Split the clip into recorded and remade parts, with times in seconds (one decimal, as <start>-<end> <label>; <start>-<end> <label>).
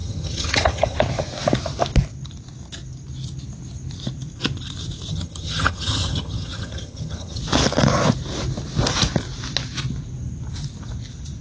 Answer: 0.0-1.0 remade; 1.0-5.1 recorded; 5.1-7.4 remade; 7.4-11.4 recorded